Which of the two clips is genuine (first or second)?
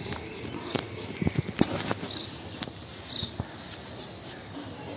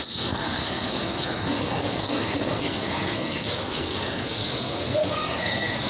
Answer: first